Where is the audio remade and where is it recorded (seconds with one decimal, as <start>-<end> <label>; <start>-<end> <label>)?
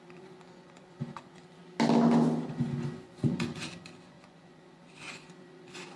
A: 0.0-1.6 remade; 1.6-2.5 recorded; 2.5-6.0 remade